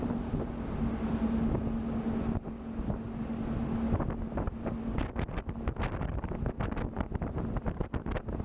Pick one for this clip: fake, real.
real